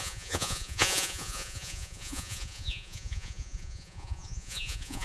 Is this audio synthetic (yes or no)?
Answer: yes